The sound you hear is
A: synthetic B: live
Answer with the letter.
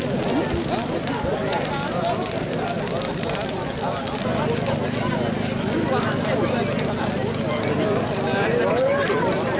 A